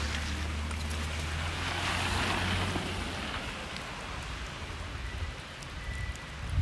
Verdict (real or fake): real